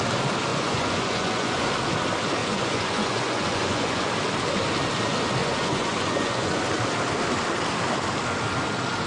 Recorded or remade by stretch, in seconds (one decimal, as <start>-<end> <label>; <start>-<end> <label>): 0.0-0.5 recorded; 0.5-1.7 remade; 1.7-2.4 recorded; 2.4-4.1 remade; 4.1-5.4 recorded; 5.4-6.6 remade; 6.6-9.1 recorded